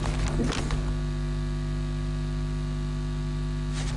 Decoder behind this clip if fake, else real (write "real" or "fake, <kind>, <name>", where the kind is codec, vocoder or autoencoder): real